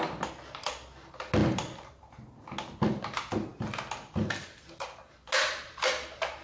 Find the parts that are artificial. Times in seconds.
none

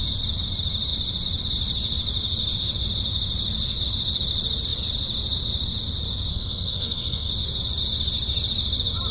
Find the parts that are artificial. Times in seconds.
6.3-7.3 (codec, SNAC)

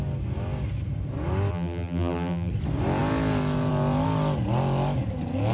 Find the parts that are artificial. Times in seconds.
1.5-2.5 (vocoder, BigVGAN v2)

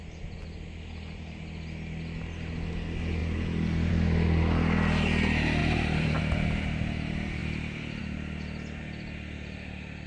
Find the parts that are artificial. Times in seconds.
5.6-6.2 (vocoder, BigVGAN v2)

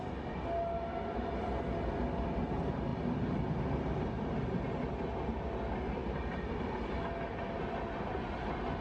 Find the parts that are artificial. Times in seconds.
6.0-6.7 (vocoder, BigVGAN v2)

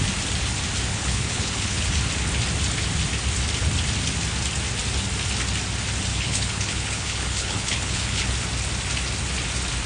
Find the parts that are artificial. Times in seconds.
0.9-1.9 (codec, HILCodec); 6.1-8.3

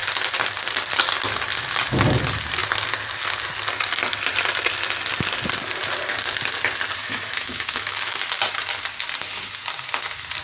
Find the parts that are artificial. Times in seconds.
7.0-8.2 (autoencoder, DAC-VAE)